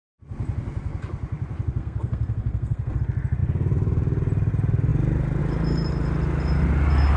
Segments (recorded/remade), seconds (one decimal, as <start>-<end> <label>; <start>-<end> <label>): 0.0-1.8 recorded; 1.8-3.0 remade; 3.0-7.2 recorded